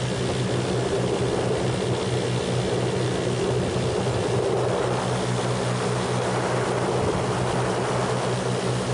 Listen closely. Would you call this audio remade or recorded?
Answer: recorded